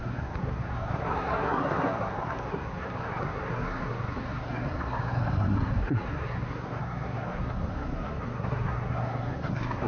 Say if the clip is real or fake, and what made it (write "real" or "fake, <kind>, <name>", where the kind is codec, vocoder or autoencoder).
fake, codec, SNAC